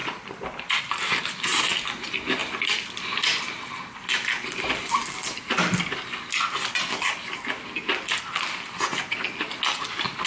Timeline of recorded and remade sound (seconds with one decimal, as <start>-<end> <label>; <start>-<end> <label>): 0.0-0.8 remade; 0.8-2.4 recorded; 2.4-4.1 remade; 4.1-10.3 recorded